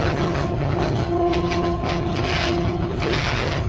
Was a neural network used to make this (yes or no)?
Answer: yes